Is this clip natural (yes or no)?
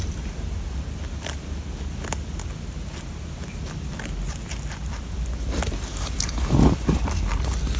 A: yes